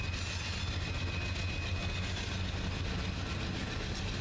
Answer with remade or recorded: recorded